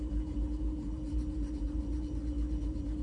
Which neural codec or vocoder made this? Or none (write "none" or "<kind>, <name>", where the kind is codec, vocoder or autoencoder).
vocoder, BigVGAN v2